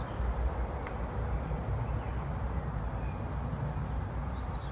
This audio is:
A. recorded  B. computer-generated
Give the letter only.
A